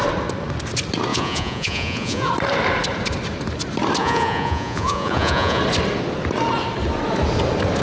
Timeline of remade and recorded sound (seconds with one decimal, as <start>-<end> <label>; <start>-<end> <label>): 0.0-1.1 recorded; 1.1-2.3 remade; 2.3-4.0 recorded; 4.0-5.6 remade; 5.6-7.8 recorded